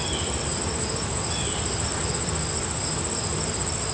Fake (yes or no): no